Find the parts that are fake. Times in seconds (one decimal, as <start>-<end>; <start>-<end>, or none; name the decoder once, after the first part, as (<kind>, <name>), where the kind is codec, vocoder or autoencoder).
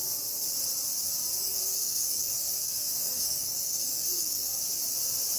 1.4-4.6 (codec, SNAC)